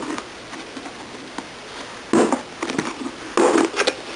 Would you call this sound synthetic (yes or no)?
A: no